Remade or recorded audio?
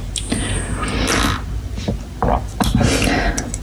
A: recorded